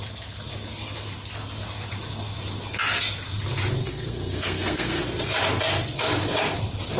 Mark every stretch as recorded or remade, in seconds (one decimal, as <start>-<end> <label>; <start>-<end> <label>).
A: 0.0-3.8 recorded; 3.8-5.0 remade; 5.0-7.0 recorded